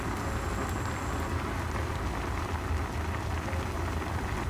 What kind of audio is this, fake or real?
real